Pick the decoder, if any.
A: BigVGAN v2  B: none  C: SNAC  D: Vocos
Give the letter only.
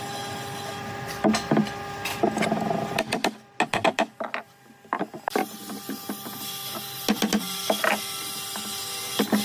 B